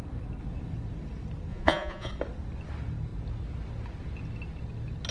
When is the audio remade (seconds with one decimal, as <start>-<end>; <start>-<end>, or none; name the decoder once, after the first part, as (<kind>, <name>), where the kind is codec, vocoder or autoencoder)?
1.5-2.1 (vocoder, Vocos)

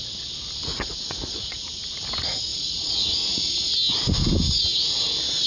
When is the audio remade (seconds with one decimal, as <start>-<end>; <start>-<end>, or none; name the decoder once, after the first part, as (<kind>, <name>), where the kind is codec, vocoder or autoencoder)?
0.7-1.8 (vocoder, Vocos); 2.5-3.7